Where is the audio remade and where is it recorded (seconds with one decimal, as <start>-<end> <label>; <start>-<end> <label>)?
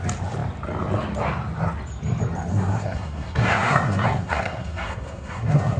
0.0-2.5 recorded; 2.5-5.8 remade